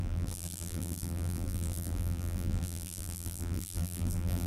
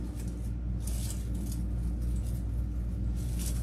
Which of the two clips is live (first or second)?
second